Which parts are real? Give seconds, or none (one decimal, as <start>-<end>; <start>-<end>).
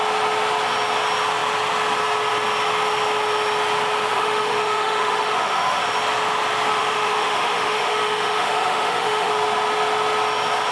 0.0-4.1; 5.8-6.7; 9.3-10.7